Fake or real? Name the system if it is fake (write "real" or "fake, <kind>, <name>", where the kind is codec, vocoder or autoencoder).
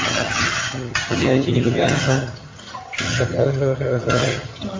fake, vocoder, HiFi-GAN